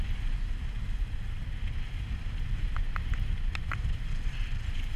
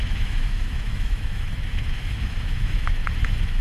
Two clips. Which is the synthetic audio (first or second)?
second